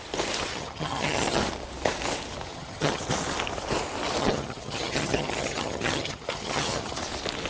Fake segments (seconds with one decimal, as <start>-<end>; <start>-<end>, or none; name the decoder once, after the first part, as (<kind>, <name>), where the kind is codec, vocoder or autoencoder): 0.5-1.4 (vocoder, HiFi-GAN); 2.5-3.0; 4.2-7.0